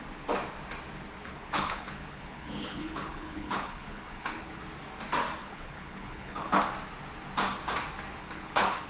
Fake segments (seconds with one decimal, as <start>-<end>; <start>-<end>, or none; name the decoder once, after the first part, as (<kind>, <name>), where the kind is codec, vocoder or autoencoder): 1.2-4.6 (codec, HILCodec); 5.4-6.6; 8.2-8.9